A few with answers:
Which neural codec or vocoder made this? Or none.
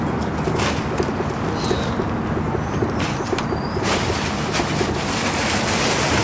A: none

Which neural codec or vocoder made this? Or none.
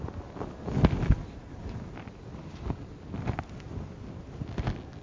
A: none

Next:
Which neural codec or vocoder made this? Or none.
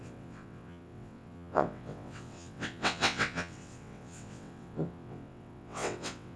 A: vocoder, WaveNeXt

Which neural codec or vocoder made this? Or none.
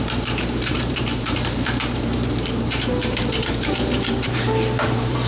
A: vocoder, BigVGAN v2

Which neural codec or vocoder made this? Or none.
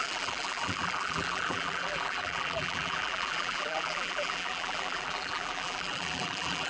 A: vocoder, BigVGAN v2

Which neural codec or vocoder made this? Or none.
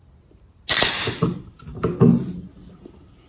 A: none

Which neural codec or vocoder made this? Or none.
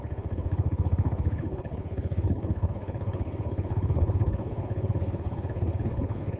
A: codec, HILCodec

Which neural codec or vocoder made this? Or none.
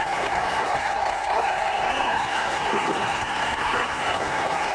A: codec, SNAC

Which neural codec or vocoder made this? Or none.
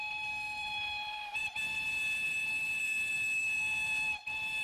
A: vocoder, BigVGAN v2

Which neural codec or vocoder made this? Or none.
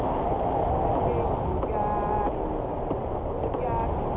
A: none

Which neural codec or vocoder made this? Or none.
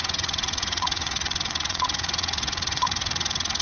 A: vocoder, WaveNeXt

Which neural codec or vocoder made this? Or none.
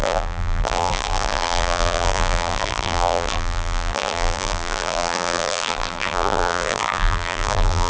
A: vocoder, BigVGAN v2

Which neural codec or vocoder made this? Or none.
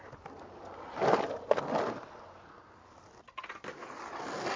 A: none